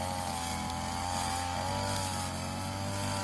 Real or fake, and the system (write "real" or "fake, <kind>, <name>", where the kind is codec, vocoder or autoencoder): real